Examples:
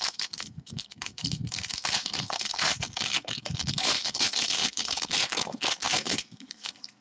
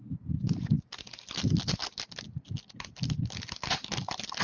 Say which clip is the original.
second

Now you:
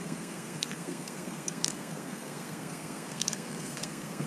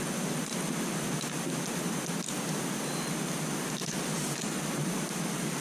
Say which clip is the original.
second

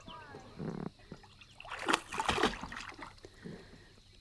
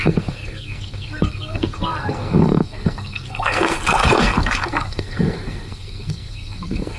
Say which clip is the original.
first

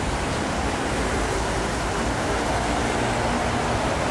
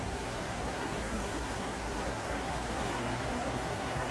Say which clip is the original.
first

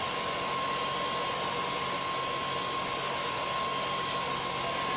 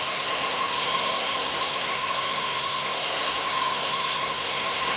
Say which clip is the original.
first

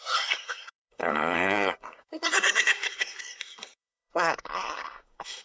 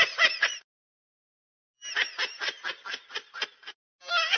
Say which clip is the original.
second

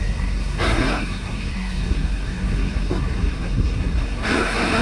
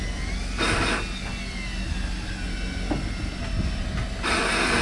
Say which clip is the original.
second